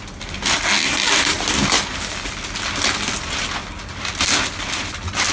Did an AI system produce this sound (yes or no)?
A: no